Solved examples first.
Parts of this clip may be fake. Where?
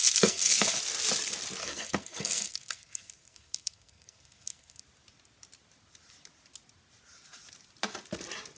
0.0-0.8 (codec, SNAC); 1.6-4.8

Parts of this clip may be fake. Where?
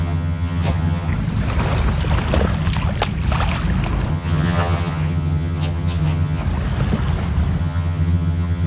0.0-1.1 (vocoder, HiFi-GAN); 4.1-6.4; 7.6-8.7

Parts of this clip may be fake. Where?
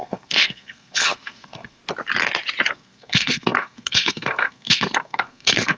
0.0-1.8 (codec, SNAC); 2.7-5.8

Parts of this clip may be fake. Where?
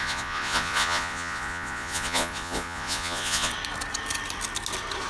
0.0-3.5 (vocoder, Vocos)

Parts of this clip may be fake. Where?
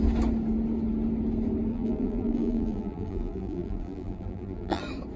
1.7-4.8 (vocoder, BigVGAN v2)